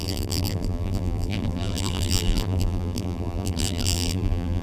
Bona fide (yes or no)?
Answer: no